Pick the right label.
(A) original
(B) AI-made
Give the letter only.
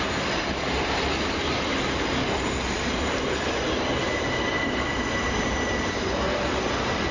A